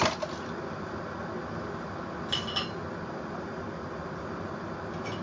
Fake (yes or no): no